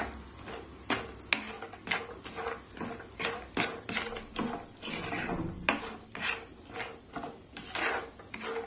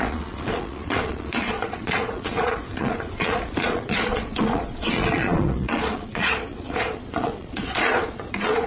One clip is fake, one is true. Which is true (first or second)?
first